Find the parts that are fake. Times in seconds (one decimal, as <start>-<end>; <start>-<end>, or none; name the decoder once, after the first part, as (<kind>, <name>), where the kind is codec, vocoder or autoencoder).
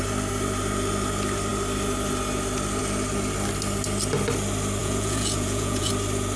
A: 4.8-5.9 (vocoder, Vocos)